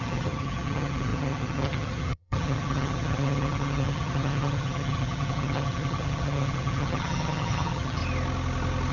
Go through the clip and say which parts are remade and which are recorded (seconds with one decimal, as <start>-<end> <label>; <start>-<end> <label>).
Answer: 0.0-8.0 remade; 8.0-8.9 recorded

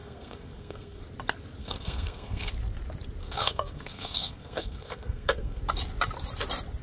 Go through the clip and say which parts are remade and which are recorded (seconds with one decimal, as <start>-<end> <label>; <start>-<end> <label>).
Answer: 0.0-1.0 remade; 1.0-1.6 recorded; 1.6-2.5 remade; 2.5-3.2 recorded; 3.2-5.6 remade; 5.6-6.8 recorded